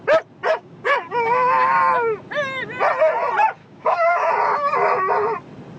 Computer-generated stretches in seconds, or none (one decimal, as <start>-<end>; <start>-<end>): 0.5-1.8; 3.6-4.3

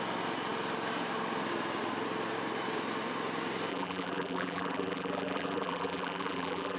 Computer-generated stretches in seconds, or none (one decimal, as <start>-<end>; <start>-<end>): 3.7-6.8

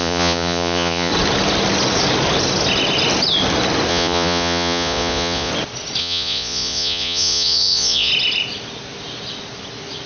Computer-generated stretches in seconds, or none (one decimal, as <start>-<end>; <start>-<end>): 0.0-1.1; 3.9-5.5; 6.0-8.1

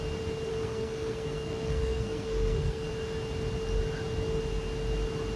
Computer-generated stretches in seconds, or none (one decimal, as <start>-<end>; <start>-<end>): 0.5-2.9